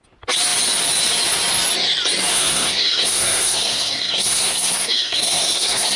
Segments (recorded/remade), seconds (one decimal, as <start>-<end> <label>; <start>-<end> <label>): 0.0-2.3 recorded; 2.3-6.0 remade